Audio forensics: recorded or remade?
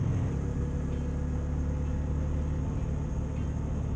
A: recorded